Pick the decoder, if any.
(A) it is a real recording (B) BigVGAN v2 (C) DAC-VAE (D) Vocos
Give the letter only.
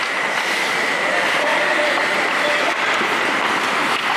A